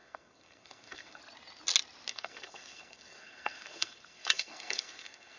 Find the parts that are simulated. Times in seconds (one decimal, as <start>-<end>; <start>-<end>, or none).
0.0-1.2; 2.1-5.4